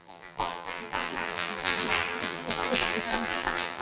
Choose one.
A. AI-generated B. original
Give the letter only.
A